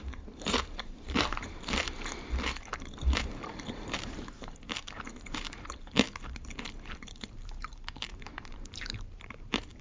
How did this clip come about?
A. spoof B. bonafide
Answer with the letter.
A